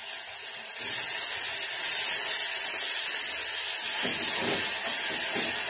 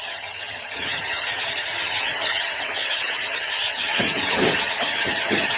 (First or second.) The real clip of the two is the first